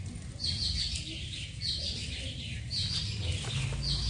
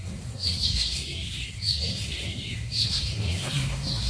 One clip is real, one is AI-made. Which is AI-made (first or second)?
second